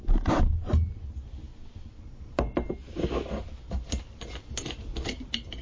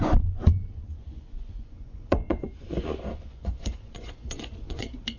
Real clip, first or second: first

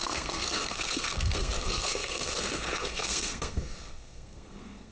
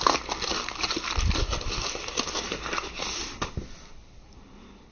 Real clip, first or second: second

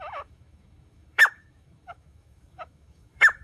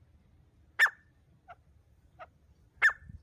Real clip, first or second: second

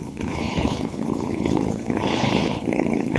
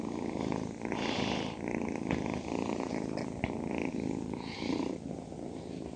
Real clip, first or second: second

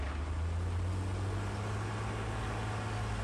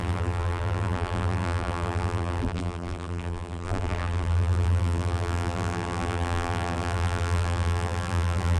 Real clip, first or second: first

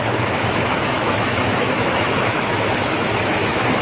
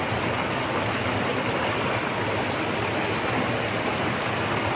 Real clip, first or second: second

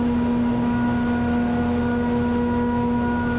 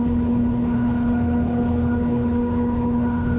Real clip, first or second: first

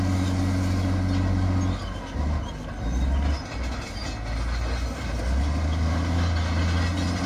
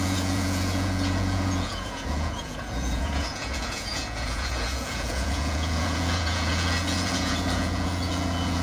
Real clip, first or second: first